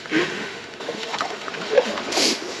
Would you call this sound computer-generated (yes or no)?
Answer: yes